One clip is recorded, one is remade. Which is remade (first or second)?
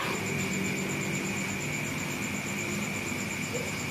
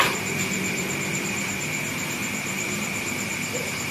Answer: second